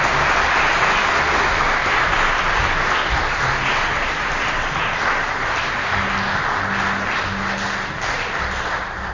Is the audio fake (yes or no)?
no